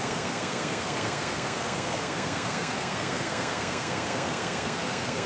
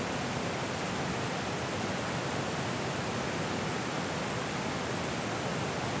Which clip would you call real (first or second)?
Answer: second